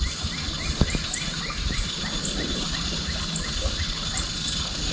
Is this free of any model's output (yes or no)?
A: yes